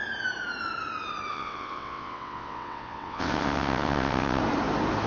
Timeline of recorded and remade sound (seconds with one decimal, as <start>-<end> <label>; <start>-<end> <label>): 0.0-1.3 recorded; 1.3-4.4 remade; 4.4-5.1 recorded